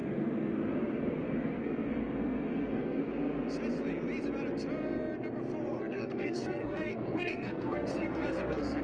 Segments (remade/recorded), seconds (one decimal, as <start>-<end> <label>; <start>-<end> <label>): 0.0-3.1 remade; 3.1-5.7 recorded; 5.7-8.8 remade